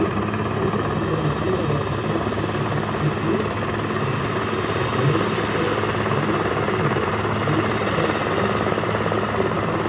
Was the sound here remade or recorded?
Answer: recorded